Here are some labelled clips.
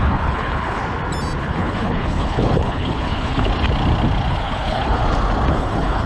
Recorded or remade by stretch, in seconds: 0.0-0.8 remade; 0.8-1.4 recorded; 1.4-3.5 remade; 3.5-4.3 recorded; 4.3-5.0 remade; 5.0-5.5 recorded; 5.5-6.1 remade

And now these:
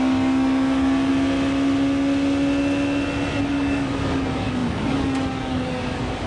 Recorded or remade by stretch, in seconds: 0.0-1.1 remade; 1.1-3.5 recorded; 3.5-6.3 remade